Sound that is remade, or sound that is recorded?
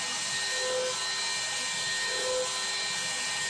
recorded